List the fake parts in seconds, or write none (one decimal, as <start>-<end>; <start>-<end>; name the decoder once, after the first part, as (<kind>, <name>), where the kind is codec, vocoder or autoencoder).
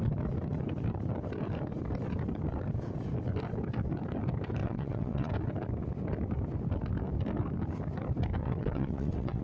4.6-5.3 (vocoder, WaveNeXt); 8.4-9.4